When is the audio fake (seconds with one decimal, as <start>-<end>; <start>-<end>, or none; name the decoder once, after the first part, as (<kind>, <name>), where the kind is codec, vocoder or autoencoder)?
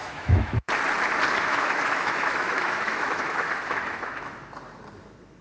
0.0-0.7 (autoencoder, DAC-VAE); 1.5-4.3